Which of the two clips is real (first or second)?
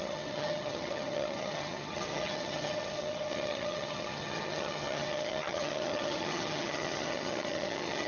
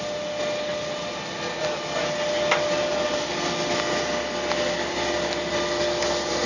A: second